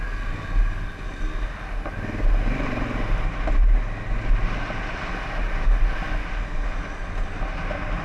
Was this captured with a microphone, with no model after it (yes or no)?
yes